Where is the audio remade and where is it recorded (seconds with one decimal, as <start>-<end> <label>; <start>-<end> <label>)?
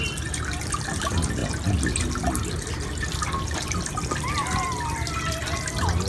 0.0-6.1 recorded